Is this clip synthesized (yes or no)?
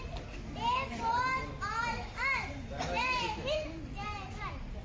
no